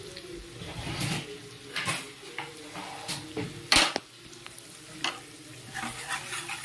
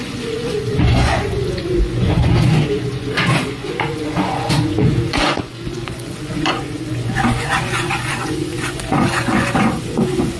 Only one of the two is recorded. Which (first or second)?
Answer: first